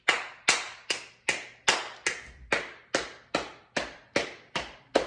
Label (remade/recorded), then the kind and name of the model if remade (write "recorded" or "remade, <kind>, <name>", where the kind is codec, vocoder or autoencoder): recorded